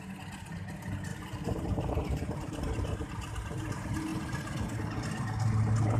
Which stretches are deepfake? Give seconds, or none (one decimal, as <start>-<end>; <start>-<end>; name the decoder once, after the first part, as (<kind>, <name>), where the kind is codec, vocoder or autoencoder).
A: 1.1-2.6 (vocoder, BigVGAN v2)